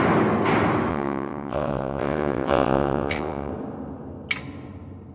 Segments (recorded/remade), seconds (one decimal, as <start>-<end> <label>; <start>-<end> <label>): 0.0-0.9 recorded; 0.9-3.5 remade; 3.5-5.1 recorded